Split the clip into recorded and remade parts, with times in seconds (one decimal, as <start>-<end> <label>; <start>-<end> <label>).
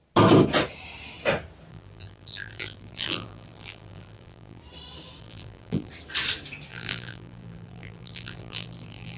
0.0-1.7 recorded; 1.7-4.6 remade; 4.6-5.2 recorded; 5.2-5.9 remade; 5.9-6.7 recorded; 6.7-9.2 remade